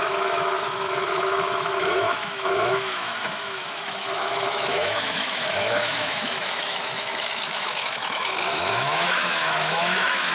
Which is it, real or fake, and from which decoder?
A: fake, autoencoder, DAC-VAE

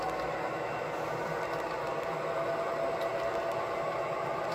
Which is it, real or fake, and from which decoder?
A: real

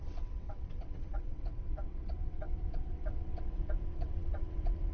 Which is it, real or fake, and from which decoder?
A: fake, vocoder, WaveNeXt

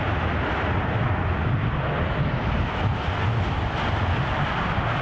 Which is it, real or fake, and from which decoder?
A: real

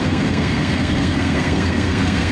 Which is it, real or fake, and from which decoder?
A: fake, codec, SNAC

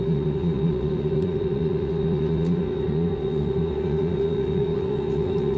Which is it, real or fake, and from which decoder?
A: fake, vocoder, Vocos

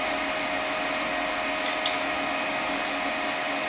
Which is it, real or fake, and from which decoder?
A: real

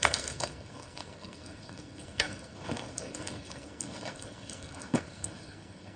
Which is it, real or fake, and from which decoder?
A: fake, codec, SNAC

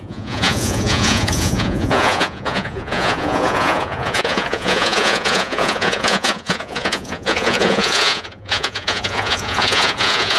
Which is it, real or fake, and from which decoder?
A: fake, vocoder, Vocos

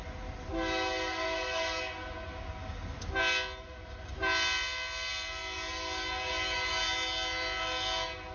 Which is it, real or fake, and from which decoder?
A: real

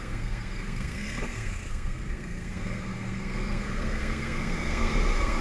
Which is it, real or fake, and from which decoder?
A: fake, codec, SNAC